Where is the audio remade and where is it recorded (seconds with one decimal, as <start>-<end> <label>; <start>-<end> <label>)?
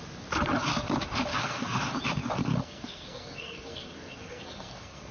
0.0-1.3 recorded; 1.3-1.8 remade; 1.8-2.6 recorded; 2.6-5.1 remade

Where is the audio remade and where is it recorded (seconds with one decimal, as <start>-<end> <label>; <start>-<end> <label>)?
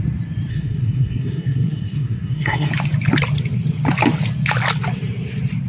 0.0-0.5 recorded; 0.5-2.7 remade; 2.7-5.7 recorded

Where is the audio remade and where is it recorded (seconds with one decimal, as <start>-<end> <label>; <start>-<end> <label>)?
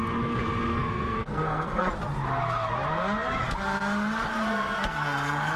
0.0-0.7 recorded; 0.7-1.9 remade; 1.9-4.5 recorded; 4.5-5.6 remade